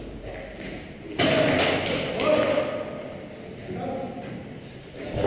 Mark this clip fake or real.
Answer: real